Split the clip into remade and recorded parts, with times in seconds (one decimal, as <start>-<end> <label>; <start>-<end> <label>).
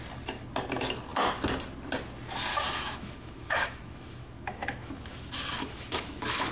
0.0-2.5 recorded; 2.5-6.5 remade